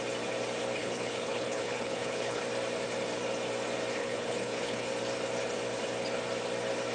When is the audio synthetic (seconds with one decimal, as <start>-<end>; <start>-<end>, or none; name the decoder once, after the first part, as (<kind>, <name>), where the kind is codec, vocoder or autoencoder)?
0.8-2.4 (codec, HILCodec); 4.0-4.9

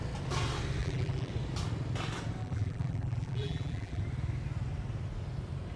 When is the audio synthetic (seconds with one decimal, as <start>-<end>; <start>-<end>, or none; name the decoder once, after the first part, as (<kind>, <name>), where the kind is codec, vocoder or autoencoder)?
0.8-1.3 (vocoder, BigVGAN v2); 2.4-4.0

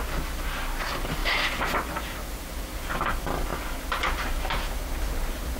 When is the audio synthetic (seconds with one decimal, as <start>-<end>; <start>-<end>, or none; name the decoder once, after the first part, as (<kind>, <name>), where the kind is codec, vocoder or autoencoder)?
none

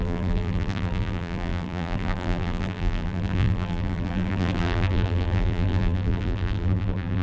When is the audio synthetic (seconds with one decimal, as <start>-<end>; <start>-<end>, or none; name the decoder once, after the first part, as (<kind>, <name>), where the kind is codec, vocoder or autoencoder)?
0.0-7.2 (vocoder, BigVGAN v2)

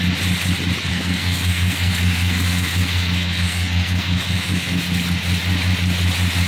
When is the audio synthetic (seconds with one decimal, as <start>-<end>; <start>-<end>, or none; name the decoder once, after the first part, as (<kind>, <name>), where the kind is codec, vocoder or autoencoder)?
0.9-4.8 (codec, SNAC)